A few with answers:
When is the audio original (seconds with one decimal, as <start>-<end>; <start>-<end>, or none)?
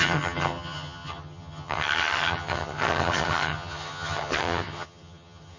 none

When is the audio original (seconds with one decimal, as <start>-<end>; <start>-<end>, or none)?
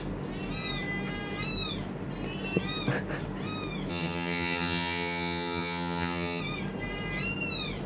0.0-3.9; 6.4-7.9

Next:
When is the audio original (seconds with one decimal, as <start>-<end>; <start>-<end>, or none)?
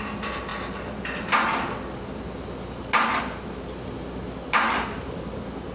0.0-5.7